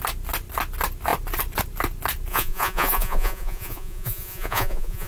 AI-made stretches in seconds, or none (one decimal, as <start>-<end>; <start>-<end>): 2.3-5.1